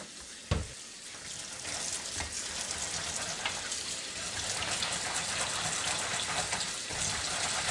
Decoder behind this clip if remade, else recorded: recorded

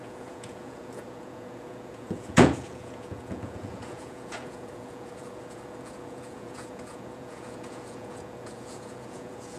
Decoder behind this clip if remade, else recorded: remade, vocoder, Vocos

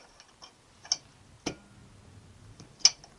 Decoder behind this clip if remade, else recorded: recorded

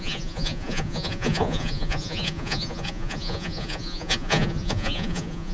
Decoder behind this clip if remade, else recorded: remade, vocoder, Vocos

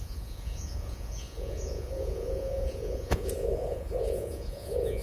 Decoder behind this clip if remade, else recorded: remade, vocoder, Vocos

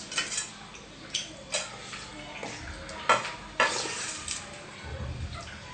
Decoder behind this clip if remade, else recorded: recorded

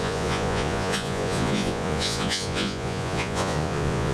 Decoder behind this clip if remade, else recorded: remade, vocoder, Vocos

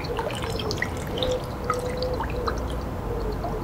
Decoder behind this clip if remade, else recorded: recorded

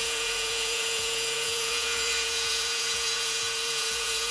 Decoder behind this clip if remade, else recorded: remade, vocoder, Vocos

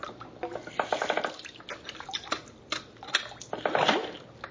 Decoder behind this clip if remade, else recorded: recorded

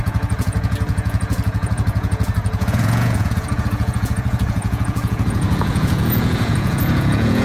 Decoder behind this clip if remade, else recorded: remade, vocoder, Vocos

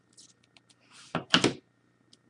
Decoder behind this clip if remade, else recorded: recorded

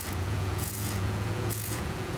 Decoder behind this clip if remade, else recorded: remade, vocoder, Vocos